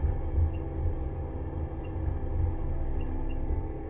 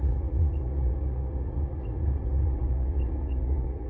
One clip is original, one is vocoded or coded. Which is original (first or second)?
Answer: first